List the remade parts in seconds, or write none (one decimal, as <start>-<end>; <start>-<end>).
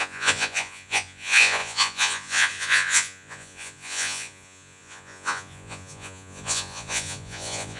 0.0-7.8